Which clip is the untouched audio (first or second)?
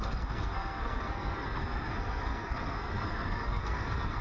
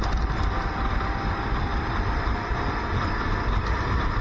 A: second